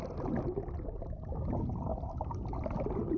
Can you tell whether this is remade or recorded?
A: recorded